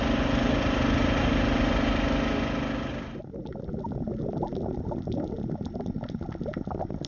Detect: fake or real real